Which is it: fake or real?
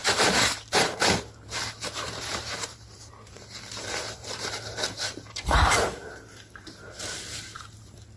fake